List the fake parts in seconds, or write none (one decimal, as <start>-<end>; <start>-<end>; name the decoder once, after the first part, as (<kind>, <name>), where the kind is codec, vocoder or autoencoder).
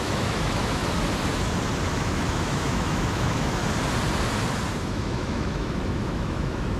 0.0-0.8 (autoencoder, DAC-VAE); 1.9-3.6; 4.8-6.8